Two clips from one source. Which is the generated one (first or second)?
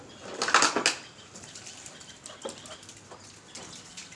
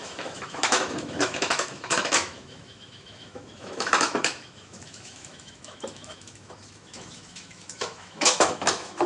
second